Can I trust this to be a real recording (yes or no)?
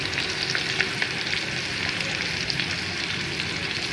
yes